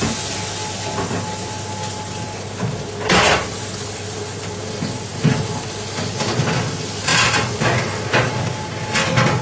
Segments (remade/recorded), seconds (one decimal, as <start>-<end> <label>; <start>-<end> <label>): 0.0-9.4 recorded